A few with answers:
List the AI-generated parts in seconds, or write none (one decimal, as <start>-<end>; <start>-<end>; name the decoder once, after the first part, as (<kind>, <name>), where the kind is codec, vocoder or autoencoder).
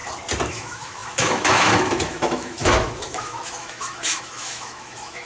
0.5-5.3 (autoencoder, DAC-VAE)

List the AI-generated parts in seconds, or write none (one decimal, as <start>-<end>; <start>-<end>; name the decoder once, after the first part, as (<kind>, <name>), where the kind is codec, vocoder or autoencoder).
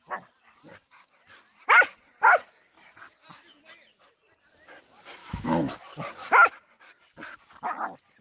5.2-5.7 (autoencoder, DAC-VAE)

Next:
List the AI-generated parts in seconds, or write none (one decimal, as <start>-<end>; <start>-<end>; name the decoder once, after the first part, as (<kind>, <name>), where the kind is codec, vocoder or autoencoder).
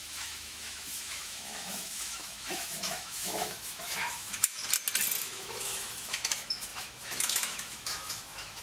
0.0-4.6 (autoencoder, DAC-VAE); 5.2-8.6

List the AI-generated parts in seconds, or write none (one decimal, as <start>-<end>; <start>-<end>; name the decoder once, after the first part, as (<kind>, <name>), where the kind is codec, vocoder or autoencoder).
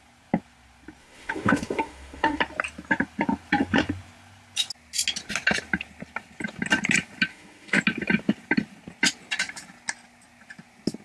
1.0-2.4 (autoencoder, DAC-VAE); 7.3-7.8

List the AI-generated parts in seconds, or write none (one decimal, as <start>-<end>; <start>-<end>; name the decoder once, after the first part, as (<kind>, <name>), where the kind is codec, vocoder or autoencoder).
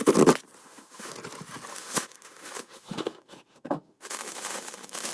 0.6-1.1 (autoencoder, DAC-VAE); 1.7-5.1